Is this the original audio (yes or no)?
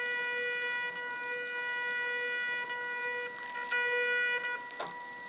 yes